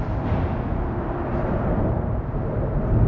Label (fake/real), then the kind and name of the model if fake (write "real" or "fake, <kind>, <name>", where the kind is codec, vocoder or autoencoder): real